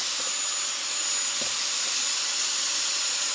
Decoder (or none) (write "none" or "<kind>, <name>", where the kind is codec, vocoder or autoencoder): none